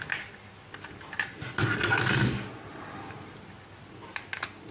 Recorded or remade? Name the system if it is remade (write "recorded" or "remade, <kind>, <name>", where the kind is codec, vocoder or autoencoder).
recorded